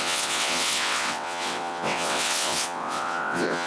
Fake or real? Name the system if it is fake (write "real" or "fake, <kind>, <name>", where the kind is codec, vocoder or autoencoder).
fake, vocoder, WaveNeXt